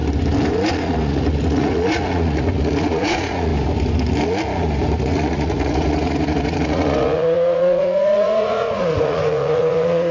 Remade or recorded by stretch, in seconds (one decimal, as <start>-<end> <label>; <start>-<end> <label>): 0.0-0.7 recorded; 0.7-3.5 remade; 3.5-5.0 recorded; 5.0-10.1 remade